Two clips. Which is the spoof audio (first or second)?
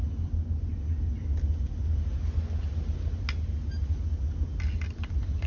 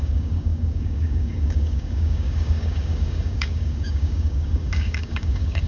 second